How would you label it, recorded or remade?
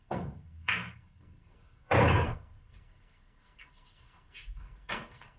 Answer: remade